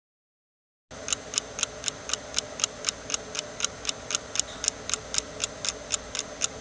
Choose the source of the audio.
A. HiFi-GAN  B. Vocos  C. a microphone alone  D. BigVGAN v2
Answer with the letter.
C